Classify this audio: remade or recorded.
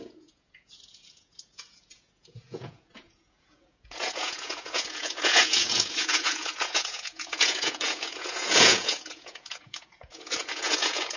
remade